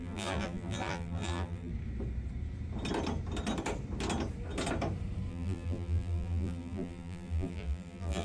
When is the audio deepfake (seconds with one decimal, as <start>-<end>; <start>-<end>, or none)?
0.0-1.7; 5.3-8.2